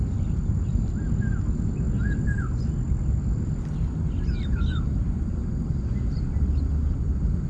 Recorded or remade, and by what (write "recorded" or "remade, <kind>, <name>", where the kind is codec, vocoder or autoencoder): recorded